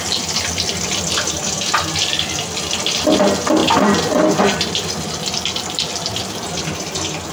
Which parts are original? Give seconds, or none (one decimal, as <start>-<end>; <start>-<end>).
0.0-3.6; 4.4-7.3